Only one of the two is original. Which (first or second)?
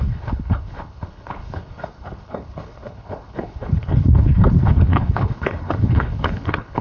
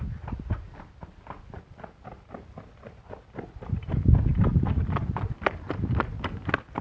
second